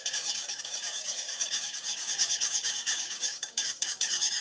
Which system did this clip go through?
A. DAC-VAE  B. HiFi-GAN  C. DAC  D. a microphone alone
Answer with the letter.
C